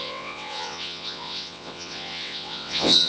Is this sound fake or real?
fake